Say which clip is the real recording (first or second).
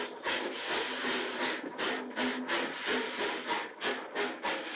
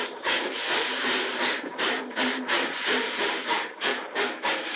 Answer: first